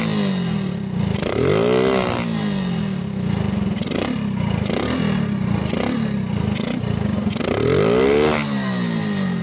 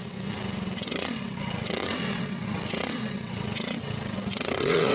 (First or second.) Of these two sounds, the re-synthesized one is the second